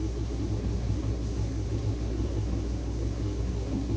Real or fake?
fake